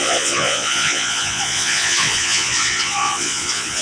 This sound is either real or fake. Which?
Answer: fake